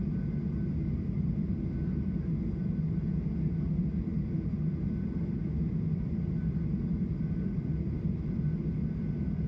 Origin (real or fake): real